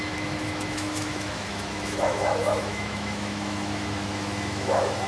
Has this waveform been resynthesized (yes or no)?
yes